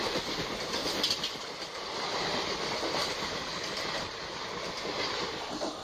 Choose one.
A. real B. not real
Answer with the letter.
A